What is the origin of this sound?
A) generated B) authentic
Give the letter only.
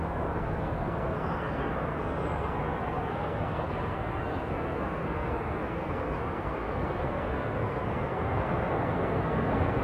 A